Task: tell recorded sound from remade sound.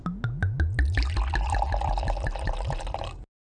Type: recorded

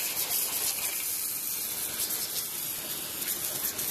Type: recorded